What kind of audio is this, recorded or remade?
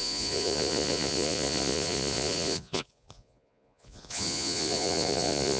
remade